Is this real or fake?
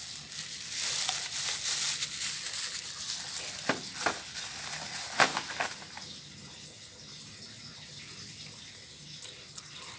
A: real